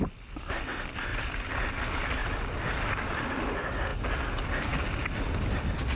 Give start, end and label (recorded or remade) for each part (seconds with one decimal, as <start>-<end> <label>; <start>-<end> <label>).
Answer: 0.0-6.0 recorded